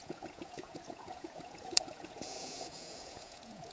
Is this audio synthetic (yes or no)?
yes